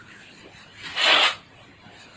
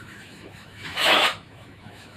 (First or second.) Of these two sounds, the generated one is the second